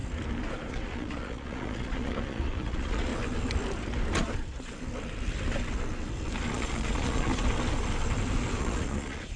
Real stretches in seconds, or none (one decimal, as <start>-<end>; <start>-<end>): 0.0-0.7; 3.1-6.5; 7.3-8.6

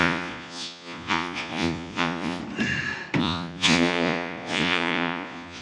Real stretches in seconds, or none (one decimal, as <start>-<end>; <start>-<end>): 2.4-3.2

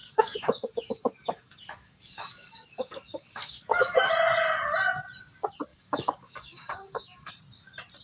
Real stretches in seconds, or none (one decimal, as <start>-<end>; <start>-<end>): 4.1-5.7; 7.3-8.0

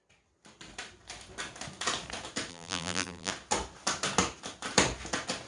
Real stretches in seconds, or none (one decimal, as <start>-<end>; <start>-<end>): 0.0-2.5; 3.3-5.5